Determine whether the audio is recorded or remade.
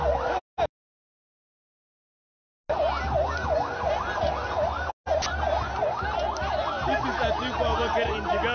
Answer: recorded